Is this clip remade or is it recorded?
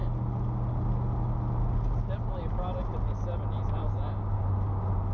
recorded